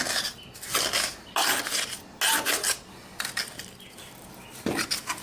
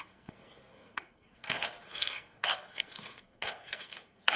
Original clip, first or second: first